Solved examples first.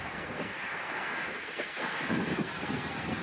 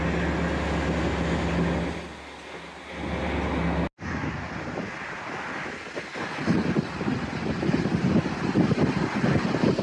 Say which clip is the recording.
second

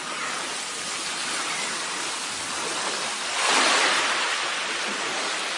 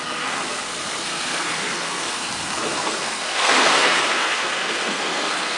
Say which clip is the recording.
first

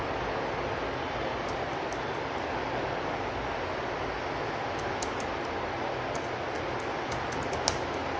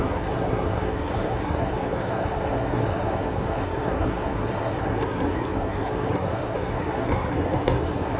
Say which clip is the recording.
first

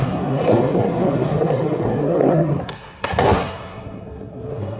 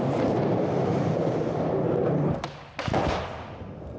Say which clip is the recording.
second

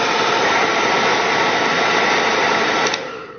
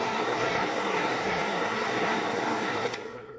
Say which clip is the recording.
first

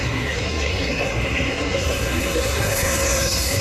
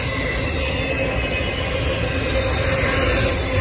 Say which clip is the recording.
second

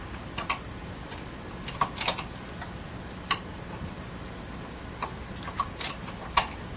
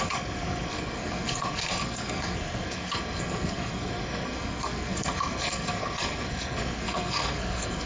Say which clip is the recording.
first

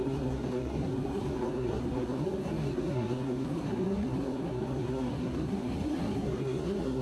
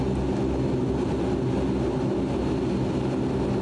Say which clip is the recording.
second